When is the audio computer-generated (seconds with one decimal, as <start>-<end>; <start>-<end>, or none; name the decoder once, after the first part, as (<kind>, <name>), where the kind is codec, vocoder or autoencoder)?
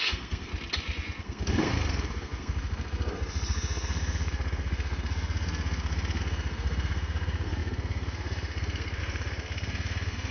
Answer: 0.0-0.5 (codec, SNAC); 1.2-10.3